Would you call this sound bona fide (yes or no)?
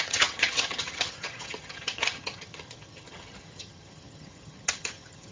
no